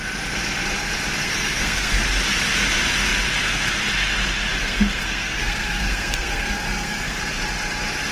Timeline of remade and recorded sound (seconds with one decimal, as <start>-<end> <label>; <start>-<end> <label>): 0.0-1.2 recorded; 1.2-2.0 remade; 2.0-4.6 recorded; 4.6-7.2 remade; 7.2-8.1 recorded